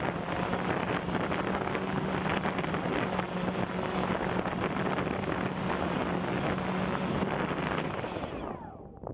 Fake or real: real